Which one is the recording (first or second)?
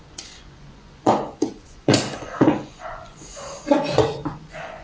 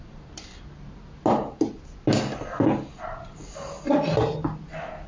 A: second